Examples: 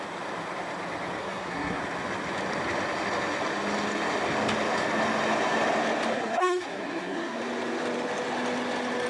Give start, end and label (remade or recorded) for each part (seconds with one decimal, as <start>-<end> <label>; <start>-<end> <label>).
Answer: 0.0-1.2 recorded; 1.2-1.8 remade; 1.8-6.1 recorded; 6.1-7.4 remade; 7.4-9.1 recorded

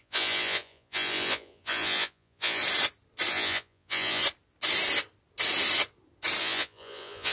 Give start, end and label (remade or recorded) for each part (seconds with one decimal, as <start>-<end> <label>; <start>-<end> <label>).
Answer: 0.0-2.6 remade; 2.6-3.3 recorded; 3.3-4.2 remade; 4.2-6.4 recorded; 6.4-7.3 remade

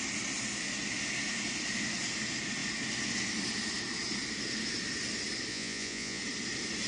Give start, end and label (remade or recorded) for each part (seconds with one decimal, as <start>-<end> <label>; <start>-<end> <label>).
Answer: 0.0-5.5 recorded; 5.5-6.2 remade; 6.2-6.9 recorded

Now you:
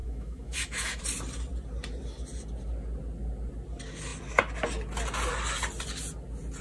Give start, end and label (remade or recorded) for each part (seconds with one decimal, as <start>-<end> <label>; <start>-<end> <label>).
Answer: 0.0-1.0 remade; 1.0-6.6 recorded